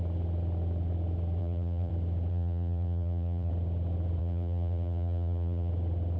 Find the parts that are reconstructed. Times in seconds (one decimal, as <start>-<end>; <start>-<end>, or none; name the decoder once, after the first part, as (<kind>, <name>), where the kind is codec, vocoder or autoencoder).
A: 1.4-1.9 (vocoder, BigVGAN v2); 2.3-3.5; 4.2-5.7